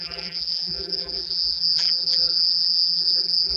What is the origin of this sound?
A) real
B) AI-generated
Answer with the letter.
B